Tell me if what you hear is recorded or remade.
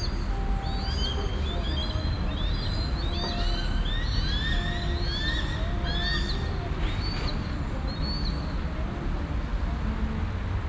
recorded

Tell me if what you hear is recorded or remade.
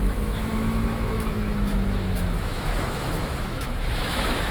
remade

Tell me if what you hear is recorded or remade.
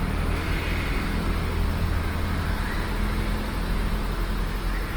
recorded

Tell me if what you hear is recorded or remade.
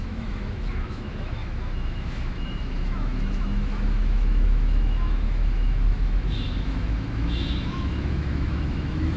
remade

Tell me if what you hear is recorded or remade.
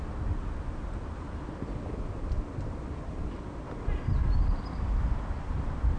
recorded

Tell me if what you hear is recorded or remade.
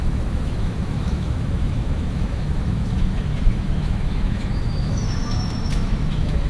remade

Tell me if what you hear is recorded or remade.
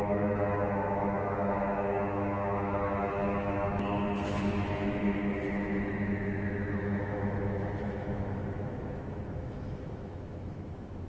remade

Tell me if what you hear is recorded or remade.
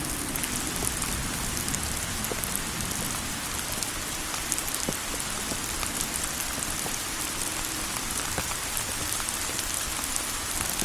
recorded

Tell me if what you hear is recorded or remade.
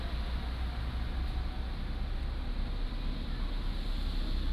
recorded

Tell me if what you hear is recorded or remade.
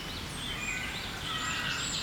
recorded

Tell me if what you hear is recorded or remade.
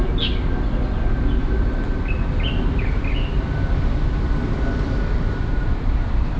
recorded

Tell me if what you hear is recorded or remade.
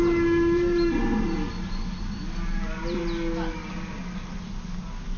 recorded